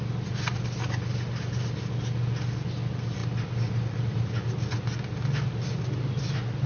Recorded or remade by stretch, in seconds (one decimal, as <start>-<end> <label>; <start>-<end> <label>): 0.0-6.7 recorded